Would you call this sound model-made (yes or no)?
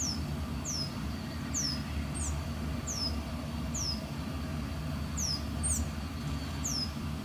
no